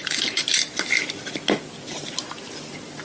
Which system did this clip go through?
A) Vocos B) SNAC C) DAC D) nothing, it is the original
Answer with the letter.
D